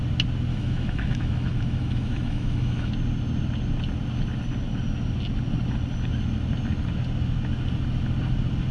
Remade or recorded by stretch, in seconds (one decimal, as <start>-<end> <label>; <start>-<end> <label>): 0.0-0.5 recorded; 0.5-2.9 remade; 2.9-8.7 recorded